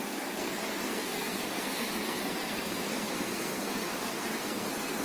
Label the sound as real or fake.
fake